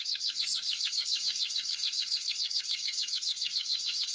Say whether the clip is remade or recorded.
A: remade